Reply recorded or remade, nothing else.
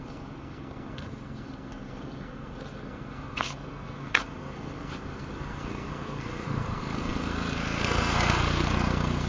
remade